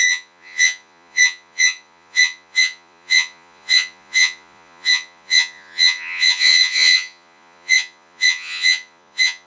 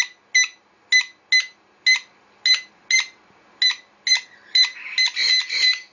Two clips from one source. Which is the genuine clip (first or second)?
second